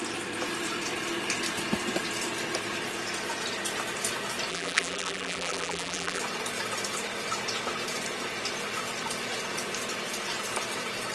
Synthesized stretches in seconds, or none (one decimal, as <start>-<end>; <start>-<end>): 4.5-6.2

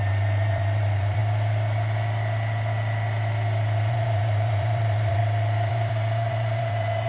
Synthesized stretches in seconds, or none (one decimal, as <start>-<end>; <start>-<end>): 0.0-1.2; 3.9-5.2; 5.7-7.1